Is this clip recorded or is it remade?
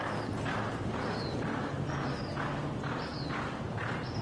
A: recorded